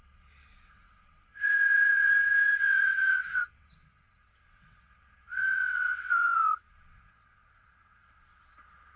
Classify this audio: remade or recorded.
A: remade